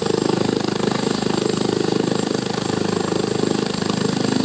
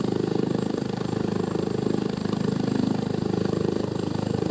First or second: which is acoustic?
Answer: first